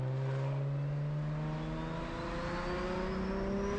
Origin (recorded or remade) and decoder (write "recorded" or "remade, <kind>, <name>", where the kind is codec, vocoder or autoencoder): recorded